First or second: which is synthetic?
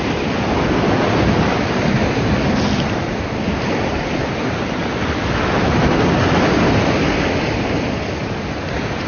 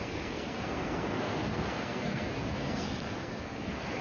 second